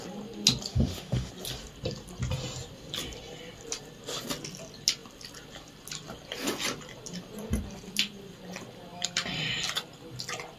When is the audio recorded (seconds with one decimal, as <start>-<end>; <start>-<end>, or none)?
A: 0.0-0.7; 1.3-10.6